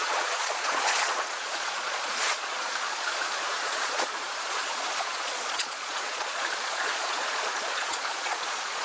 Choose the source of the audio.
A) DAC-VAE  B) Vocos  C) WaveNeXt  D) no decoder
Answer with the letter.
B